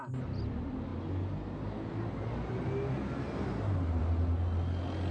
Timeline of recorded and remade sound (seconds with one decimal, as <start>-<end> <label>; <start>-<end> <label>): 0.0-5.1 recorded